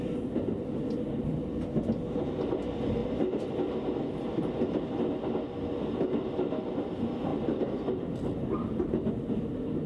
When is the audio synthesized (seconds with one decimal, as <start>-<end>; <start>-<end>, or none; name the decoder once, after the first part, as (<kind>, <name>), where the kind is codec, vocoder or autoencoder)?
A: 7.3-9.1 (vocoder, BigVGAN v2)